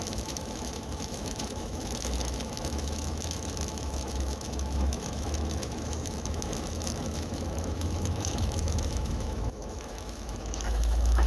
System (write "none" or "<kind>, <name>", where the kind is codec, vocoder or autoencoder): autoencoder, DAC-VAE